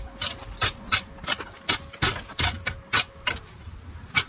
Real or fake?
real